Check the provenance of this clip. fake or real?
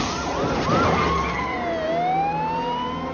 real